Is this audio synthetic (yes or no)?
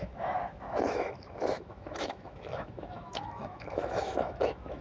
yes